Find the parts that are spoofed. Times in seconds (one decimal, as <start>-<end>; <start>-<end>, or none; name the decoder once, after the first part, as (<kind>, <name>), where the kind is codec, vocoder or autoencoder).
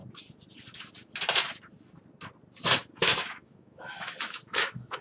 3.0-5.0 (autoencoder, DAC-VAE)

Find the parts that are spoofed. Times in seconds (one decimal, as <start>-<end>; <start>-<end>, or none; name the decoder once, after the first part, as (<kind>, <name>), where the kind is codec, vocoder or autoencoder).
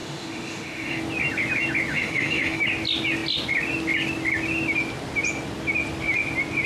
0.0-1.0 (autoencoder, DAC-VAE); 1.9-2.6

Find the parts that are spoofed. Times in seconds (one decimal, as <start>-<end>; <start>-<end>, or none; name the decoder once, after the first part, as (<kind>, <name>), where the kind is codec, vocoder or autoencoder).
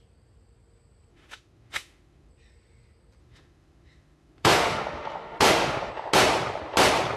1.1-2.3 (autoencoder, DAC-VAE); 3.2-5.9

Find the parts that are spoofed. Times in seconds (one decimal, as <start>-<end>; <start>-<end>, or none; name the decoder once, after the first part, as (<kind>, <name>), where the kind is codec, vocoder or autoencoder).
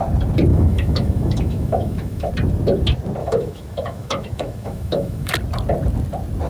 0.5-2.3 (autoencoder, DAC-VAE); 3.2-5.3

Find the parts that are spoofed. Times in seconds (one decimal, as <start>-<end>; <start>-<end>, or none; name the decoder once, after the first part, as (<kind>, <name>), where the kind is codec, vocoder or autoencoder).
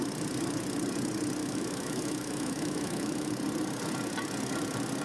1.4-3.3 (autoencoder, DAC-VAE)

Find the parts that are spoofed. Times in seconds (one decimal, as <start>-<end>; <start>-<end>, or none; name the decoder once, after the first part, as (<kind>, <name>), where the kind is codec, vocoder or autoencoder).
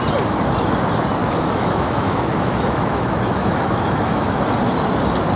1.2-4.4 (autoencoder, DAC-VAE)